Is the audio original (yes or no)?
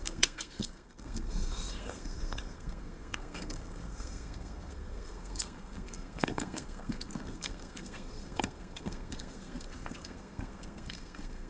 no